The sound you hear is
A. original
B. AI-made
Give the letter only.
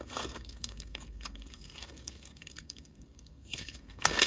B